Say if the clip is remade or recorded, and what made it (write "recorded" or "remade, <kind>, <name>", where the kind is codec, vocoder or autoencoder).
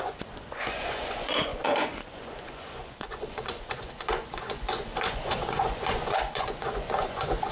remade, vocoder, Vocos